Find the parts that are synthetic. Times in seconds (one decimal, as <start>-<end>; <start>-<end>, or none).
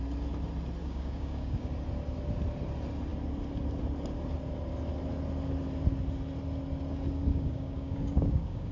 0.8-1.7; 7.3-8.7